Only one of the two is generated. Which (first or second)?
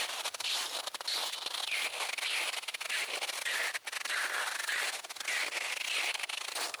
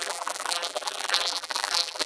second